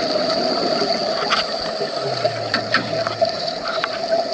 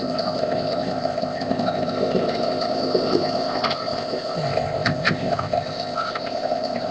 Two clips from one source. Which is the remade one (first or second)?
second